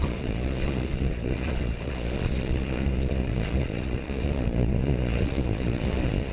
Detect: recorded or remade remade